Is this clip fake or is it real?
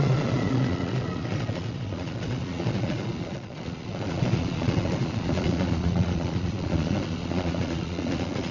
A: fake